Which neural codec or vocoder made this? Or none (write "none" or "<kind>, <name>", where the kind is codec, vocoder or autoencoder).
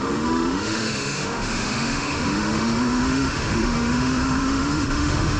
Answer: autoencoder, DAC-VAE